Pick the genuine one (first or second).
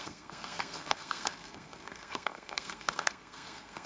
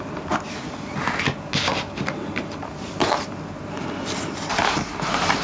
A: second